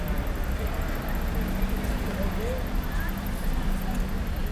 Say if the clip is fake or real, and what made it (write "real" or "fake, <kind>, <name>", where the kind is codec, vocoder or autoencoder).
real